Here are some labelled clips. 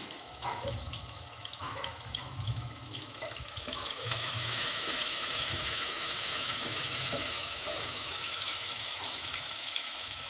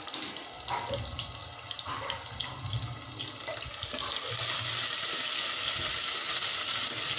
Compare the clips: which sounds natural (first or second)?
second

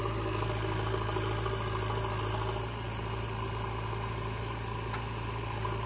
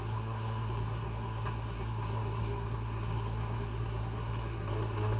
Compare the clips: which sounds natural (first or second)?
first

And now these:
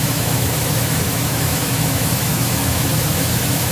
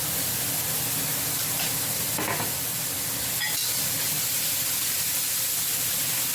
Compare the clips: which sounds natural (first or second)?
second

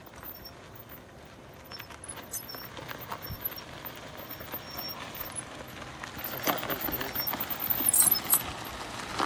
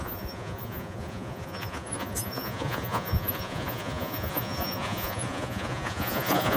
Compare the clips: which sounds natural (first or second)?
first